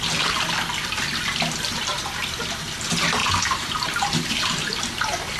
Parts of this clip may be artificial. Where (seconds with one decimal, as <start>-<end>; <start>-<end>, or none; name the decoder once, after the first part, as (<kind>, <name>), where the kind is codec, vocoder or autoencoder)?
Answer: 1.9-2.4 (vocoder, BigVGAN v2); 3.2-4.8